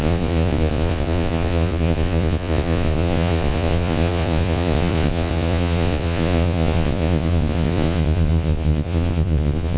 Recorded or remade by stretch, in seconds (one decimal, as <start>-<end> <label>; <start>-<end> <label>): 0.0-9.8 remade